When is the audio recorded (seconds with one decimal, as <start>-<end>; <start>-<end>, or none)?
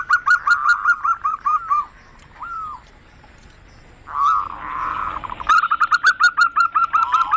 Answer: 0.0-2.0; 3.8-4.8; 5.5-7.4